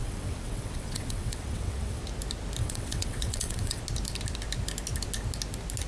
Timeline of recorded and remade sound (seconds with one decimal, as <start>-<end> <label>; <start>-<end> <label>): 0.0-2.0 remade; 2.0-2.6 recorded; 2.6-3.8 remade; 3.8-5.9 recorded